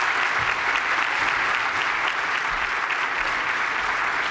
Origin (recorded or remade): recorded